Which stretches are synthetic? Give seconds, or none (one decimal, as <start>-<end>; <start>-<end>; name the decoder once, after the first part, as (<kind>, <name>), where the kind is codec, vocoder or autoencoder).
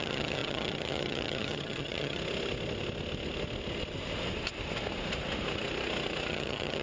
0.0-2.2 (vocoder, HiFi-GAN); 6.3-6.8